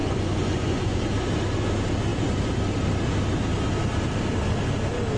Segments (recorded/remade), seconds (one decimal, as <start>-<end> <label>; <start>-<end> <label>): 0.0-1.0 remade; 1.0-5.2 recorded